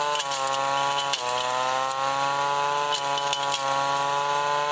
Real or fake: real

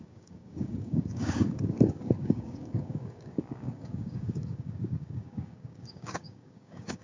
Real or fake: fake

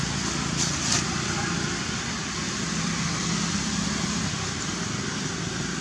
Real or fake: real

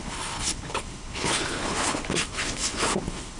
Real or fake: fake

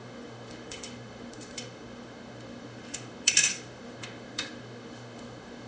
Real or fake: fake